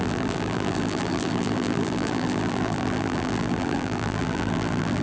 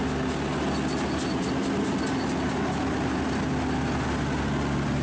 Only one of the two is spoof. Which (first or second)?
first